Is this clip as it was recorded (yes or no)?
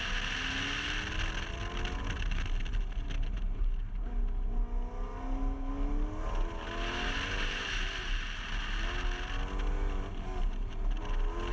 yes